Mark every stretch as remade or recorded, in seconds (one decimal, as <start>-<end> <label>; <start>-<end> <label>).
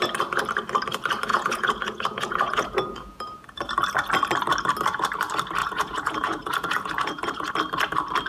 0.0-1.3 recorded; 1.3-3.6 remade; 3.6-5.6 recorded; 5.6-7.5 remade; 7.5-8.3 recorded